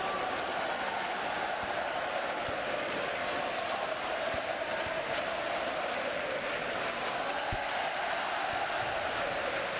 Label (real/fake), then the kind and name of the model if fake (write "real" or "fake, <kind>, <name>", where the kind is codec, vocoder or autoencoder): real